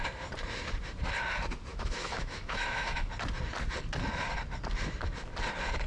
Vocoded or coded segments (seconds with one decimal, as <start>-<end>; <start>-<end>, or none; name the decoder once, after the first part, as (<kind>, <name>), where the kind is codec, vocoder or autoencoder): 1.7-3.1 (autoencoder, DAC-VAE)